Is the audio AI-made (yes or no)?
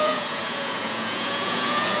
yes